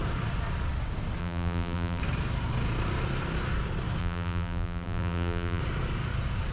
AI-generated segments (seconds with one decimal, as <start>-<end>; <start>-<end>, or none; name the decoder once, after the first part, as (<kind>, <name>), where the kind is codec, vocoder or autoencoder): 1.2-2.0 (vocoder, BigVGAN v2); 4.0-5.6